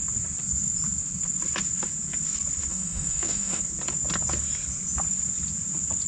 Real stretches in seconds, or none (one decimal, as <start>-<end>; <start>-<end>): 0.0-2.7; 3.6-6.1